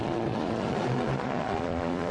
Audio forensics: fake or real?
fake